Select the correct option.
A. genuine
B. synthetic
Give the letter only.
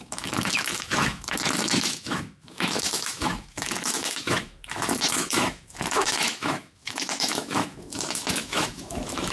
B